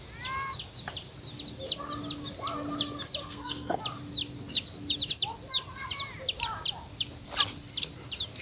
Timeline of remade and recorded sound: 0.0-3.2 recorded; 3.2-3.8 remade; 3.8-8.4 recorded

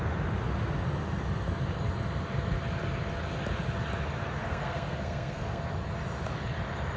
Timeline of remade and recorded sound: 0.0-4.4 recorded; 4.4-5.6 remade; 5.6-7.0 recorded